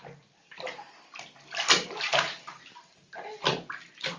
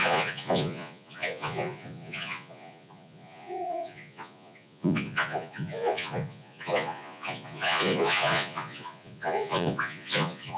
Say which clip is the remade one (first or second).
second